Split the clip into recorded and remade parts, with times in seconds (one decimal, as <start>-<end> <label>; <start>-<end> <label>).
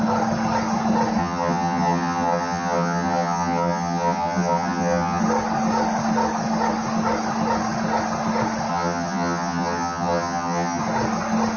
0.0-1.2 recorded; 1.2-5.2 remade; 5.2-8.7 recorded; 8.7-10.8 remade; 10.8-11.6 recorded